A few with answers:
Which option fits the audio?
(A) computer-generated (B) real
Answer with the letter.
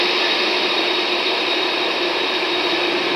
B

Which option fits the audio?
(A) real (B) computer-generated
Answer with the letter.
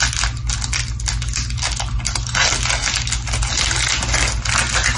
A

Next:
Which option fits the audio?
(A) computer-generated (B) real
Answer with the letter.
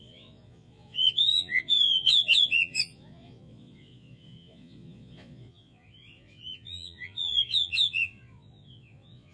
A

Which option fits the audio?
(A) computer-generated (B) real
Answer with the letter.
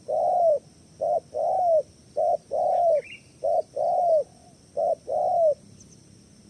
B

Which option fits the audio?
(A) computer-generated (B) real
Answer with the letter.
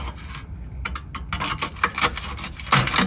B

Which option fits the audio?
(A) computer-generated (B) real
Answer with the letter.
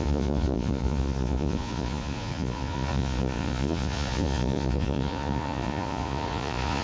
A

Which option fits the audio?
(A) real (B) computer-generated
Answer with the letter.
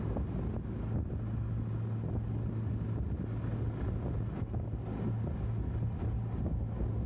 A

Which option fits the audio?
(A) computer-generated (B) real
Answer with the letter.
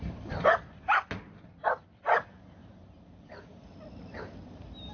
B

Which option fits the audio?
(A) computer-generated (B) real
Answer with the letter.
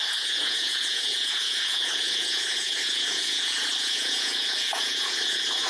A